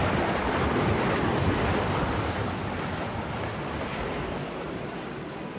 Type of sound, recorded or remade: recorded